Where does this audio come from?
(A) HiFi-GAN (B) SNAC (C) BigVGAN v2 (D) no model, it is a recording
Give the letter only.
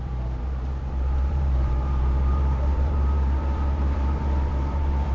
C